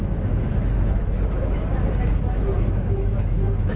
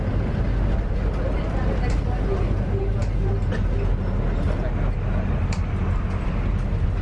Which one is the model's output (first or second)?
first